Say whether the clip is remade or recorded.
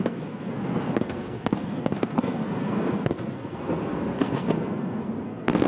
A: remade